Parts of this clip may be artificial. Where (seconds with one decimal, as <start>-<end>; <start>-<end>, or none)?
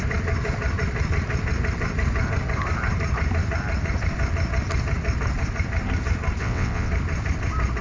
6.4-6.9